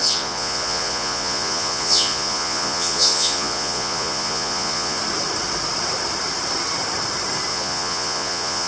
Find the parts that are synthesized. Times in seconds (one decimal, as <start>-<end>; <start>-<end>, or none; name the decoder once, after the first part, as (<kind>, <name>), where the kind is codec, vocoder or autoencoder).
0.0-5.0 (vocoder, Vocos); 7.5-8.7